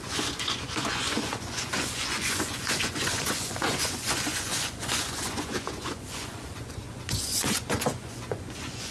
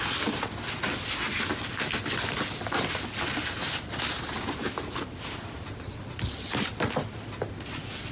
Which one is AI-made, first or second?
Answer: first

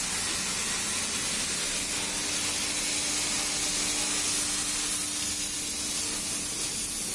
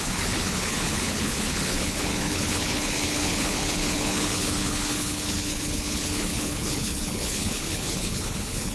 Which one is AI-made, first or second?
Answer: second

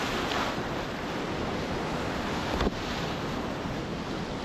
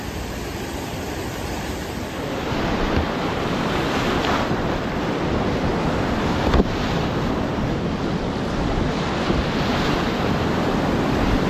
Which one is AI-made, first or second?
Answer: second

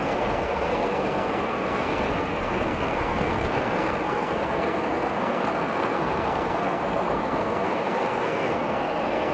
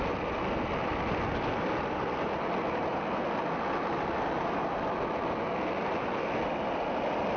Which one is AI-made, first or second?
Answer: first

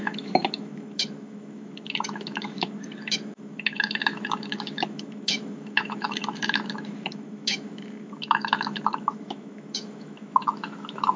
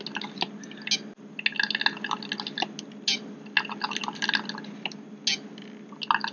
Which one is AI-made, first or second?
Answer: first